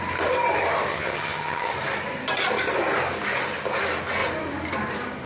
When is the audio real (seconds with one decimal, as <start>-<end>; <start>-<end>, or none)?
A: 0.0-0.9; 1.7-5.3